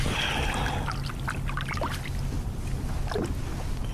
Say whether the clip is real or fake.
real